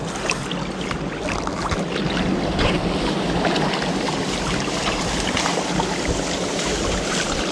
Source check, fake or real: real